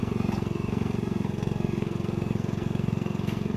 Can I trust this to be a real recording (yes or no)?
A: no